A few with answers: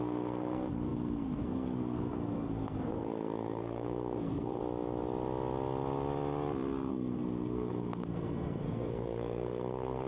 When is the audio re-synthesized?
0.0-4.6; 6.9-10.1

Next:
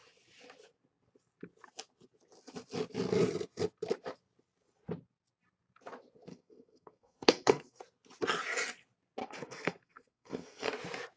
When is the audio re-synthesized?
6.3-7.8; 9.2-10.7

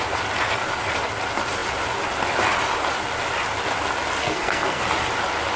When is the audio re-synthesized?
4.2-4.8